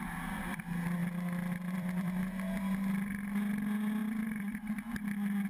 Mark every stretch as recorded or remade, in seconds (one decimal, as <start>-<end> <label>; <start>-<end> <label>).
0.0-1.0 recorded; 1.0-2.6 remade; 2.6-4.0 recorded; 4.0-4.8 remade; 4.8-5.5 recorded